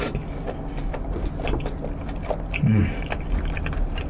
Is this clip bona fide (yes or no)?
yes